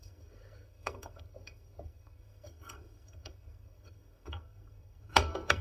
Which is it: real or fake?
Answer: fake